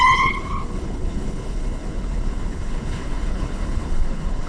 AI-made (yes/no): yes